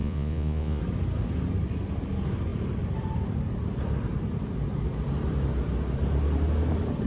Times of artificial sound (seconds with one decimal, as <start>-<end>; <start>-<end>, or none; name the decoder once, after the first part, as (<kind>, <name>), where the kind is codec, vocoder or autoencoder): 0.0-0.8 (vocoder, Vocos)

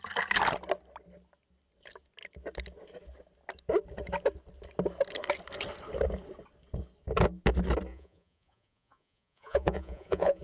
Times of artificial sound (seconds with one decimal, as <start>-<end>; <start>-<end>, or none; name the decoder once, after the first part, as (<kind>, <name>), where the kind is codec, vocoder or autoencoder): 7.9-10.4 (vocoder, Vocos)

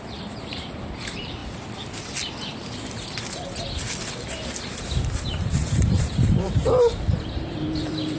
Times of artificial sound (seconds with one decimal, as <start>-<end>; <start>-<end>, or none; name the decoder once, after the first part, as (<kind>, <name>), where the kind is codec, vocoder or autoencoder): 0.0-1.4 (vocoder, BigVGAN v2); 4.8-8.2